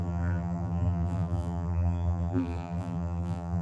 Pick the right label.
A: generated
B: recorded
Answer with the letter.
A